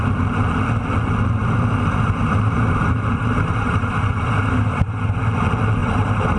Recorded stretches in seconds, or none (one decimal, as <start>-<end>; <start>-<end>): 0.0-1.4; 5.2-5.8

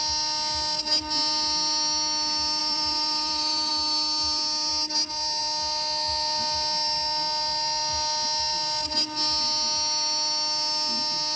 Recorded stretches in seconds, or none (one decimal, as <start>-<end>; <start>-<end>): 0.0-2.6; 3.7-11.4

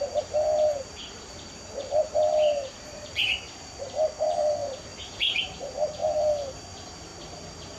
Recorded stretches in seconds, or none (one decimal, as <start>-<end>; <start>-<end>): none

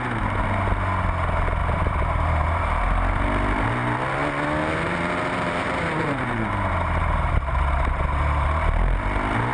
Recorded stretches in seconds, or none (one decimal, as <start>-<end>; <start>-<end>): 0.0-1.6; 2.8-4.6; 7.3-9.5

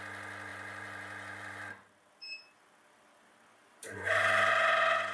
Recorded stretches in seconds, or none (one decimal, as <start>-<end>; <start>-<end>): 0.0-0.5; 2.1-3.8; 4.6-5.1

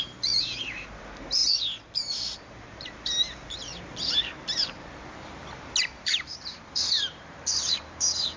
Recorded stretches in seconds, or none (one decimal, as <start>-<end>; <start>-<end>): 1.4-2.1; 3.7-5.8